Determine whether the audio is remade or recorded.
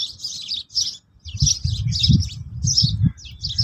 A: recorded